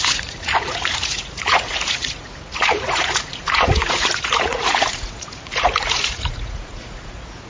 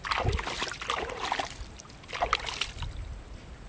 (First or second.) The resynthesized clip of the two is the first